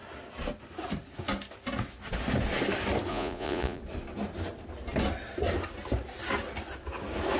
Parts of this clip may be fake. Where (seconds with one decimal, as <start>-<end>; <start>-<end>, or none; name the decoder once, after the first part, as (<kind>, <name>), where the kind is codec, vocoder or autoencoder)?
3.1-3.8 (vocoder, Vocos)